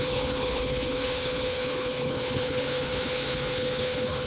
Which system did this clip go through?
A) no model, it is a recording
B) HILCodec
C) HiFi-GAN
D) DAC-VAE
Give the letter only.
B